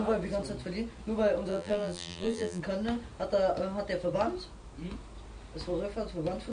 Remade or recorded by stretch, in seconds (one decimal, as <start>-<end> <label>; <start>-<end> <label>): 0.0-1.5 recorded; 1.5-2.6 remade; 2.6-6.5 recorded